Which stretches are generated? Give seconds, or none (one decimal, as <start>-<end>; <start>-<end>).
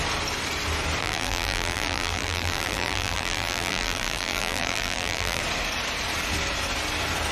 1.0-5.4